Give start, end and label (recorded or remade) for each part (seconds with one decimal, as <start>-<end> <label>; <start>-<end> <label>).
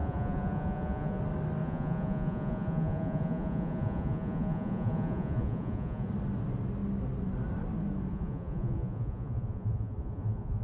0.0-1.2 remade; 1.2-1.6 recorded; 1.6-6.1 remade; 6.1-8.1 recorded; 8.1-10.6 remade